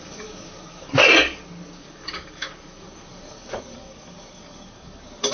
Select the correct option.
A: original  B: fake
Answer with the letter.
B